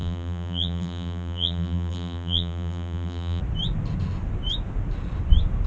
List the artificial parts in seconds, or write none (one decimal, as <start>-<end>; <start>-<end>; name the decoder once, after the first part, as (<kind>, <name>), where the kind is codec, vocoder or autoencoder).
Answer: 0.0-3.4 (vocoder, BigVGAN v2)

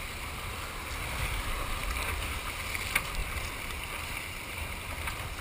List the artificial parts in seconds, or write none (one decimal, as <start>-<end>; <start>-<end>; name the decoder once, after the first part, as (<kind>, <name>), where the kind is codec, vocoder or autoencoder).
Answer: none

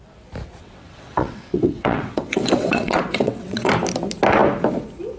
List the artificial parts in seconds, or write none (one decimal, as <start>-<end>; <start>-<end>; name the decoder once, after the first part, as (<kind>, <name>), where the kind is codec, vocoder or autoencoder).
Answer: 0.6-3.7 (vocoder, WaveNeXt)

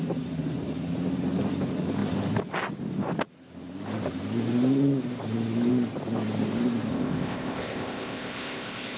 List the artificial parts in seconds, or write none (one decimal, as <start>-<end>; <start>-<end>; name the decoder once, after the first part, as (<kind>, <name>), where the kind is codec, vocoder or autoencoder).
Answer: 6.9-9.0 (codec, ZipCodec)